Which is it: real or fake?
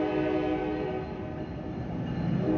real